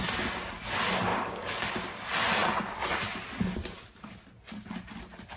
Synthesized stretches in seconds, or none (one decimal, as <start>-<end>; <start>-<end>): 1.1-1.7